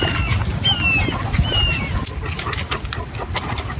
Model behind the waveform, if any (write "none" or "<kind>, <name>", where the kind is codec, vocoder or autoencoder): none